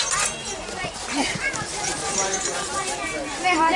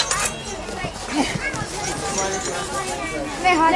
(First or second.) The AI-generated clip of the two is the first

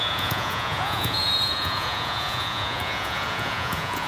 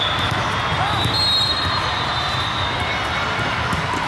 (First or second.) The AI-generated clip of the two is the first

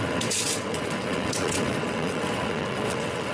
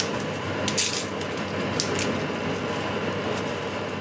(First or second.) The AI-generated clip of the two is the first